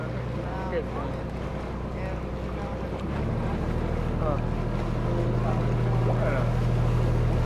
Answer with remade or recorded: recorded